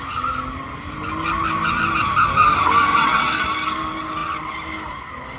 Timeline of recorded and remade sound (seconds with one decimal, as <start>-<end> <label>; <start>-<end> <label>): 0.0-2.9 recorded; 2.9-3.4 remade; 3.4-5.4 recorded

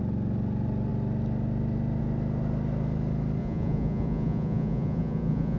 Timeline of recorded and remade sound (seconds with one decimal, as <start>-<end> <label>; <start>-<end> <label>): 0.0-3.4 recorded; 3.4-5.6 remade

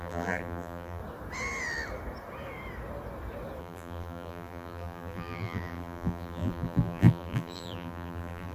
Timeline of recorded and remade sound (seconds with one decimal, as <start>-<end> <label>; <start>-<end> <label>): 0.0-1.0 remade; 1.0-3.6 recorded; 3.6-8.5 remade

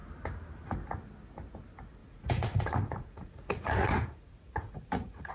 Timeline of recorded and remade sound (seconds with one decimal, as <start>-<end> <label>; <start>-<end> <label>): 0.0-2.0 recorded; 2.0-5.3 remade

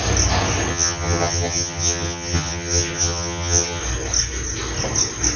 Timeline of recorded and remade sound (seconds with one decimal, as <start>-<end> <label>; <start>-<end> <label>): 0.0-0.7 recorded; 0.7-3.8 remade; 3.8-5.4 recorded

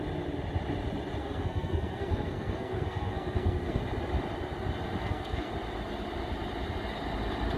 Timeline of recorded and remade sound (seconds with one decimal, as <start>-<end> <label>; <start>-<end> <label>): 0.0-1.2 recorded; 1.2-3.8 remade; 3.8-5.0 recorded; 5.0-5.5 remade; 5.5-7.6 recorded

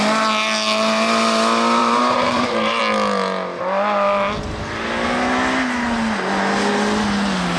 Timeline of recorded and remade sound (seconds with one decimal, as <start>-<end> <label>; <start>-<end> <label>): 0.0-1.8 recorded; 1.8-2.8 remade; 2.8-7.6 recorded